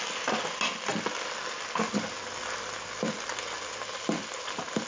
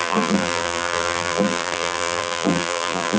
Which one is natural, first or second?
first